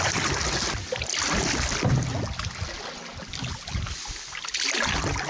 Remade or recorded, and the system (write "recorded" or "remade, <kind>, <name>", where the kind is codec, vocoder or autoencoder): recorded